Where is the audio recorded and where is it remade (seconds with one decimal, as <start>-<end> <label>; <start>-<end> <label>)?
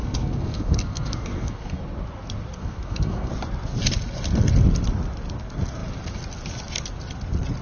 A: 0.0-1.8 remade; 1.8-2.6 recorded; 2.6-3.3 remade; 3.3-7.6 recorded